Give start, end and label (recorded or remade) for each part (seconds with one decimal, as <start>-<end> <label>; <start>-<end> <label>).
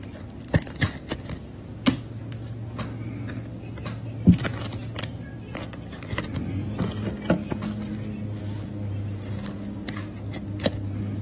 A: 0.0-11.2 recorded